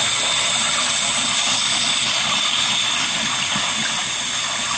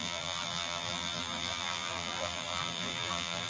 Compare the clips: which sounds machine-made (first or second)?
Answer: second